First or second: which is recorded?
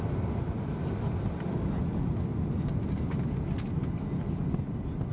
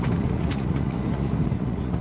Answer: first